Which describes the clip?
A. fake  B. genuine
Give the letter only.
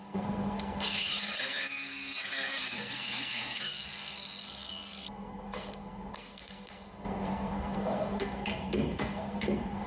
A